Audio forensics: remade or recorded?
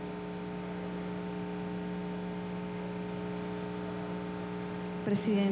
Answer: recorded